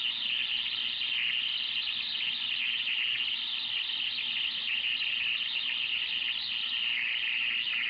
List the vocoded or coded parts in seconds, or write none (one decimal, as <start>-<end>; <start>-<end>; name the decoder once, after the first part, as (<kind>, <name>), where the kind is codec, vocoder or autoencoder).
none